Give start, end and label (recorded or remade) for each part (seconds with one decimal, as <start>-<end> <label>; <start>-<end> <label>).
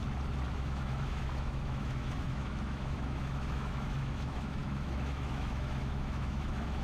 0.0-0.5 recorded; 0.5-6.8 remade